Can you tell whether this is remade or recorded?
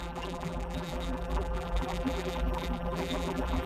remade